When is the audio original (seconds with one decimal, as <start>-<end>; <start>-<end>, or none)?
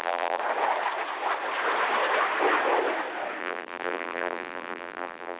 0.4-3.4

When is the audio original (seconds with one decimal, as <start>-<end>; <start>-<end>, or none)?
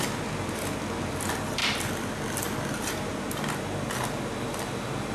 0.0-5.1